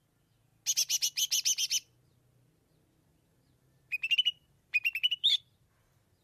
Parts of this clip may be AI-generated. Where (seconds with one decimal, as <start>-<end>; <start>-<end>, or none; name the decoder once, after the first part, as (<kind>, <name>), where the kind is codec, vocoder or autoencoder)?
3.1-5.4 (vocoder, BigVGAN v2)